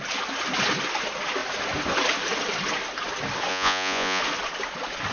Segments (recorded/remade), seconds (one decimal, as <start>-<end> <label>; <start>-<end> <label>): 0.0-3.5 recorded; 3.5-4.2 remade; 4.2-5.1 recorded